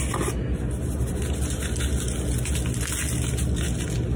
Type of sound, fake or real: real